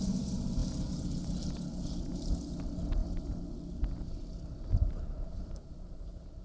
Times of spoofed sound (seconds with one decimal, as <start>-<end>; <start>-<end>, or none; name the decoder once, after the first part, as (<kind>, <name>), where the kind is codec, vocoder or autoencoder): none